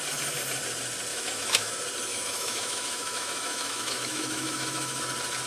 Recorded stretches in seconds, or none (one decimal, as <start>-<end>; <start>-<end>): 0.0-1.1; 1.7-2.1; 5.0-5.5